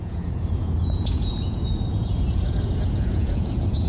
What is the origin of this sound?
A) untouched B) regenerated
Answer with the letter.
B